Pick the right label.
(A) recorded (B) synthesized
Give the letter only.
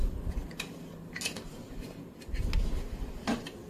A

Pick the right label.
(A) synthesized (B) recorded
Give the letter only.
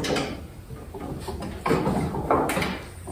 B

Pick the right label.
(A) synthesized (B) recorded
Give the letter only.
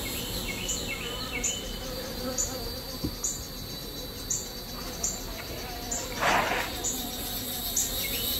B